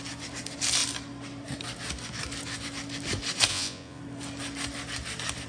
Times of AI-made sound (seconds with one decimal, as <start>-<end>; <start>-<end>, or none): 3.5-4.0